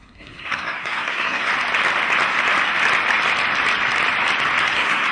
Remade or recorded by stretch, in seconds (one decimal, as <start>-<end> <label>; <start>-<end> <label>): 0.0-1.5 remade; 1.5-4.6 recorded; 4.6-5.1 remade